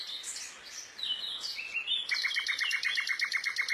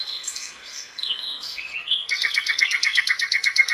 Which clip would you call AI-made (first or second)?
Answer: second